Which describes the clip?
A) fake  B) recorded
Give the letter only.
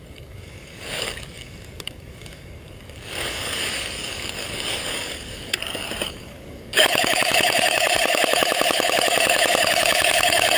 A